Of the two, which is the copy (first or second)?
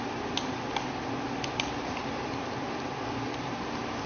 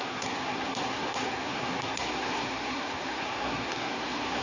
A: second